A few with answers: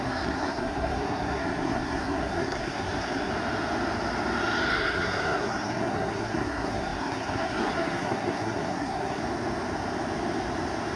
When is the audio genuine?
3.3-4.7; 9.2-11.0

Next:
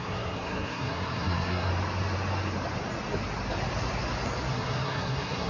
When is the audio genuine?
1.7-4.5

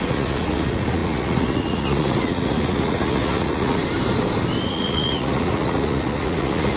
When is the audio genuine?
3.8-4.7

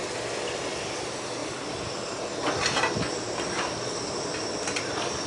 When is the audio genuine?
0.0-5.3

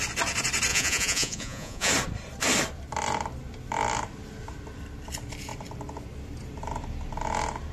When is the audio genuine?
0.0-0.7; 1.9-7.7

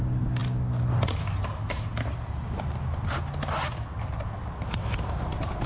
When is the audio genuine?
0.0-5.7

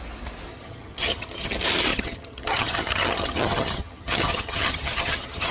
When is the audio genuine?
0.0-0.5; 1.5-1.9